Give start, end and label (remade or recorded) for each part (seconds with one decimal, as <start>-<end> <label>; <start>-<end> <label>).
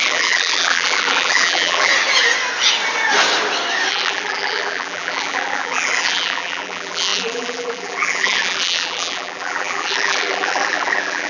0.0-1.9 remade; 1.9-3.9 recorded; 3.9-11.3 remade